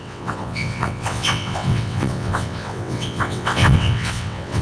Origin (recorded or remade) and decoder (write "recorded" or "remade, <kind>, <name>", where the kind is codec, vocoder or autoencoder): remade, vocoder, WaveNeXt